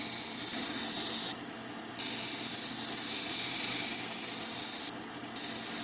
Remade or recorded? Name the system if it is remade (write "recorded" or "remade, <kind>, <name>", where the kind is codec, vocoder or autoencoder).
recorded